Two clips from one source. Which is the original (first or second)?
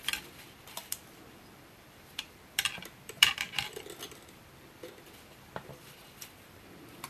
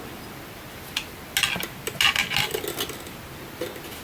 second